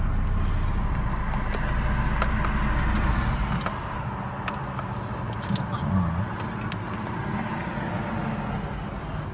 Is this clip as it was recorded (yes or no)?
yes